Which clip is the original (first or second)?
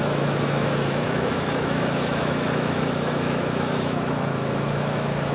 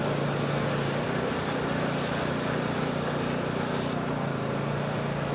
second